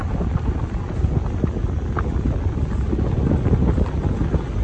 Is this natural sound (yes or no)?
yes